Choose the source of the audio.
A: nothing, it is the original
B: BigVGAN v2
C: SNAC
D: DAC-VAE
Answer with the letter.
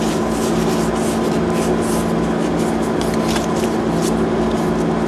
A